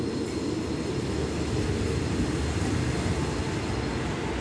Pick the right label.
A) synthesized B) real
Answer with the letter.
B